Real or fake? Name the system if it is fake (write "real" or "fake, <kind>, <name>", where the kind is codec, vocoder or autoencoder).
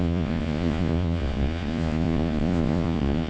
fake, vocoder, Vocos